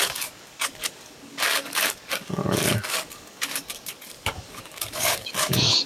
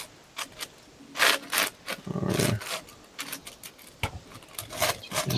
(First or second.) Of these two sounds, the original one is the second